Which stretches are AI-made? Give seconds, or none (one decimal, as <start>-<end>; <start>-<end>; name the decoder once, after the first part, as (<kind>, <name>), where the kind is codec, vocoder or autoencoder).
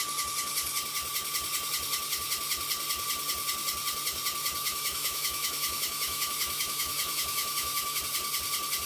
4.6-8.0 (autoencoder, DAC-VAE)